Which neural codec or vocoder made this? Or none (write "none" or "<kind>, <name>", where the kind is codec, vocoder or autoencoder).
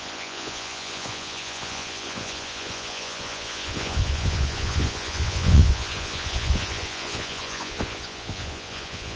vocoder, Vocos